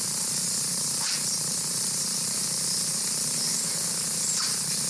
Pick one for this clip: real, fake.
real